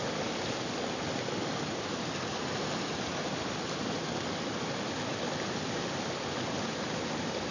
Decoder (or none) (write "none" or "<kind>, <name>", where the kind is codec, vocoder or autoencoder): none